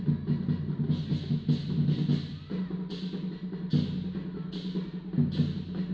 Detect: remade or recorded recorded